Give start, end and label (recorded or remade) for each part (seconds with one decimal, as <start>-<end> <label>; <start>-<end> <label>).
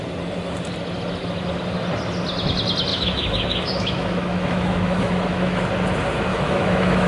0.0-2.9 recorded; 2.9-5.6 remade; 5.6-6.3 recorded; 6.3-7.1 remade